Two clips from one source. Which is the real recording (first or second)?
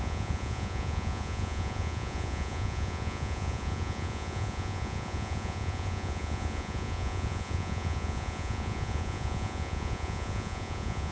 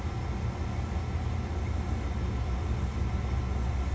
second